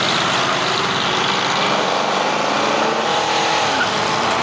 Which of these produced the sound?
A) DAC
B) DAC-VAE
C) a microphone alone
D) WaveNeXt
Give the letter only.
C